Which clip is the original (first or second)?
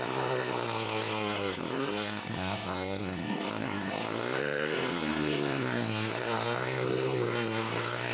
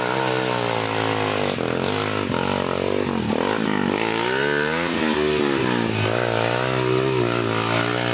second